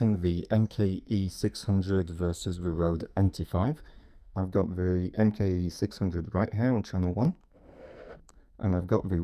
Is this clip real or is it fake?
fake